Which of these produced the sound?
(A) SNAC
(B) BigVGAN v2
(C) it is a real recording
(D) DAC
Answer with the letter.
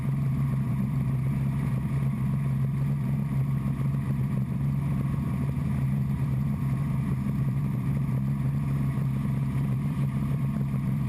B